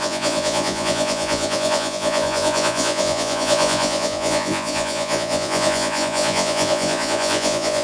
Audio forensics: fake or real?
fake